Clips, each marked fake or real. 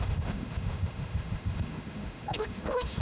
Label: fake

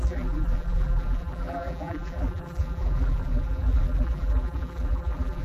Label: fake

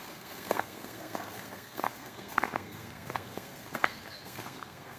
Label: fake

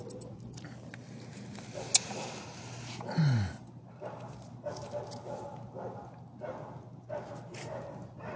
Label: real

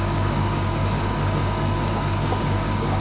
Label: fake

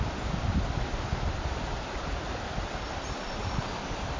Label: real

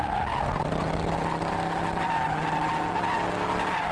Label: real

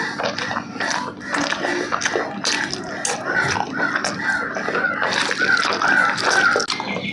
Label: real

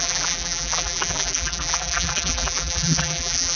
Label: fake